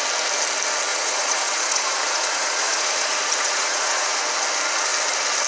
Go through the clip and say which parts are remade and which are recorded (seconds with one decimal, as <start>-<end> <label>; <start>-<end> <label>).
0.0-0.9 recorded; 0.9-4.2 remade; 4.2-5.5 recorded